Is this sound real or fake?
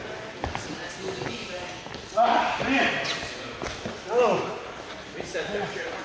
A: real